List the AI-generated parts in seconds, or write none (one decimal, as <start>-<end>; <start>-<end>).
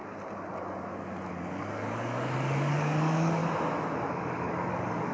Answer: 1.3-3.4; 4.1-5.1